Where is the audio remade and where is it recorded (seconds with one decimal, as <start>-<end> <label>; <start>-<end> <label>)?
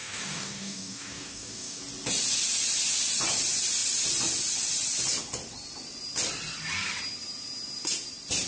0.0-1.8 remade; 1.8-8.5 recorded